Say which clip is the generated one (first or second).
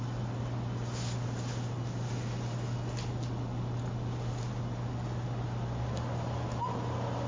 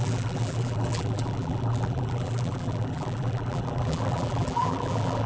second